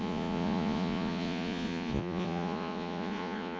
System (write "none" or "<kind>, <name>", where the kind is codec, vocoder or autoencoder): vocoder, Vocos